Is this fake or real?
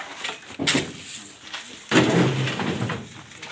real